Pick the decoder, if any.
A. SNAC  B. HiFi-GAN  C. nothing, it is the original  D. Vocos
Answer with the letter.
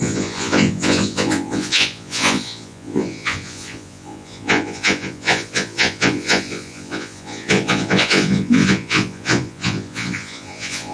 D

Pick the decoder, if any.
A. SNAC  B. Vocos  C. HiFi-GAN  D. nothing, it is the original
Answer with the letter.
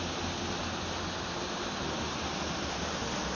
D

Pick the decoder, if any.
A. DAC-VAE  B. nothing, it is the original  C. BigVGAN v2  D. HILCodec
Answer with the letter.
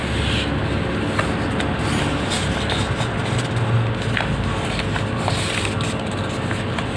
B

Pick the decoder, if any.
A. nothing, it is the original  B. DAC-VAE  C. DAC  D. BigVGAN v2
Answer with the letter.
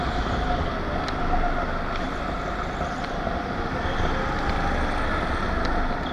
A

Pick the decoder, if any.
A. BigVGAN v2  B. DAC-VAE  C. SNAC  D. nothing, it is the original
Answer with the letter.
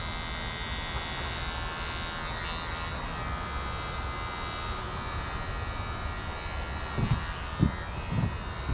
D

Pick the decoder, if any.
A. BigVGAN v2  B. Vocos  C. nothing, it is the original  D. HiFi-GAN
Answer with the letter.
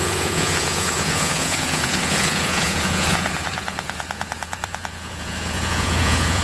B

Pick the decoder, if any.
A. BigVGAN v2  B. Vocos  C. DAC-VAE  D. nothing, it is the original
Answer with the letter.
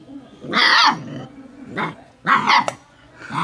B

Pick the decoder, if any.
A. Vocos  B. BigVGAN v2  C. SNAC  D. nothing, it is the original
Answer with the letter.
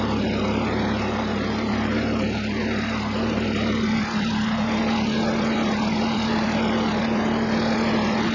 D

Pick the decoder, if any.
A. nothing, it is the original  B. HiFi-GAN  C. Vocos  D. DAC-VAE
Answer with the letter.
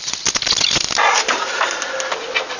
A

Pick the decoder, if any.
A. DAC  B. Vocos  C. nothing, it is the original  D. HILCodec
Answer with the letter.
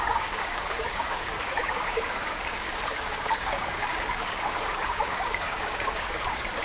A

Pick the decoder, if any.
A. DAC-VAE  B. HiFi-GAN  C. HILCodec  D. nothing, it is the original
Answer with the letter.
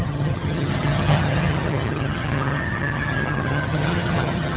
B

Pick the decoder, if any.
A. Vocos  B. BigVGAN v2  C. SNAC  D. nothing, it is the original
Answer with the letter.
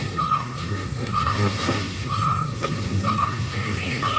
C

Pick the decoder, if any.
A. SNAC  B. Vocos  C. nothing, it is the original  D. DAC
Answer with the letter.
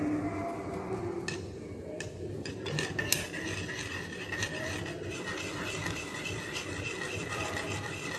C